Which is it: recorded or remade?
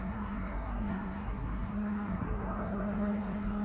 remade